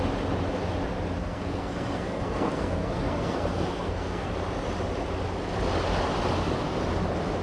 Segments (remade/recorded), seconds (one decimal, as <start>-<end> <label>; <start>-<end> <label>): 0.0-1.2 recorded; 1.2-4.3 remade; 4.3-7.4 recorded